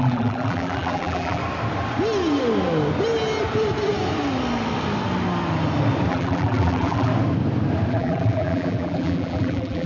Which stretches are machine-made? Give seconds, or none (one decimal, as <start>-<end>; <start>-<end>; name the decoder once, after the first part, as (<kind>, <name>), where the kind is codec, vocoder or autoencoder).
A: 0.0-1.4 (vocoder, BigVGAN v2); 6.1-7.1; 7.9-9.9